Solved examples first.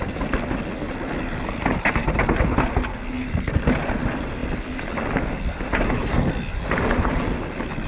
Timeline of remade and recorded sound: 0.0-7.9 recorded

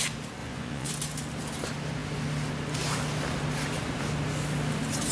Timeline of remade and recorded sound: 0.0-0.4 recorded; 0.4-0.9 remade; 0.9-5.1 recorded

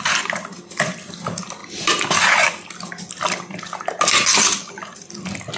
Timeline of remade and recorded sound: 0.0-5.6 recorded